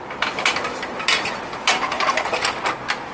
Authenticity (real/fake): real